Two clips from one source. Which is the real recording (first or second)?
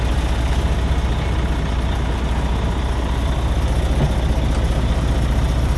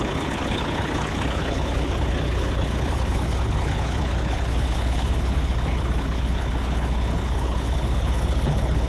first